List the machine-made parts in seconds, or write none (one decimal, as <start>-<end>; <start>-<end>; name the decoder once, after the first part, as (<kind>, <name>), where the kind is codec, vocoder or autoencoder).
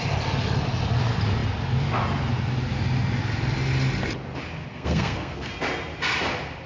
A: 4.7-5.5 (codec, SNAC)